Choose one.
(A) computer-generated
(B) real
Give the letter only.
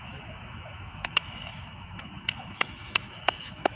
A